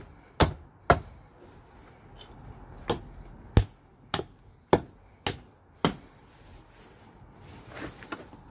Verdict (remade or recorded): recorded